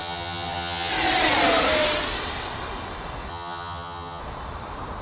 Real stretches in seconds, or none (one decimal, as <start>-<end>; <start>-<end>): 0.9-3.3; 4.2-5.0